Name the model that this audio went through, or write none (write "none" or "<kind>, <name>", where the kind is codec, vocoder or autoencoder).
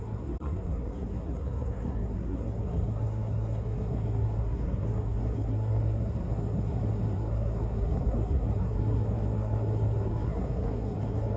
codec, SNAC